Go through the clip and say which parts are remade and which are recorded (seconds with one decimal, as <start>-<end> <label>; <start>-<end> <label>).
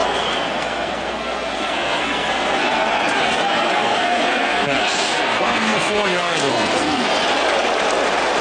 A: 0.0-7.1 remade; 7.1-8.4 recorded